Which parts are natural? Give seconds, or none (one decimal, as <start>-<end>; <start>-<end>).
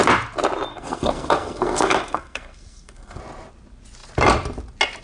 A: 0.0-0.7; 3.2-5.0